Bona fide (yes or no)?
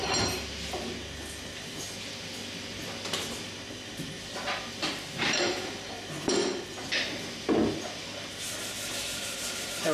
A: yes